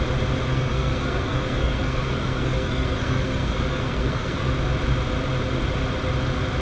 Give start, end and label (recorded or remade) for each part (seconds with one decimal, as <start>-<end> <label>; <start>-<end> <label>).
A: 0.0-0.5 recorded; 0.5-4.5 remade; 4.5-6.6 recorded